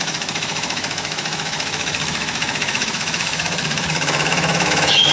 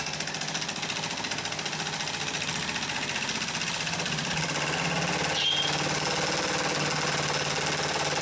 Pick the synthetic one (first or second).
first